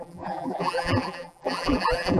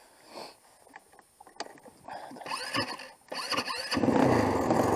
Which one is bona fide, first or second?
second